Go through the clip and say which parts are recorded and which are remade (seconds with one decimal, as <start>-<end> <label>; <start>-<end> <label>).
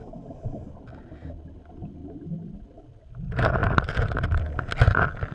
0.0-2.0 recorded; 2.0-2.6 remade; 2.6-3.6 recorded; 3.6-4.4 remade; 4.4-5.3 recorded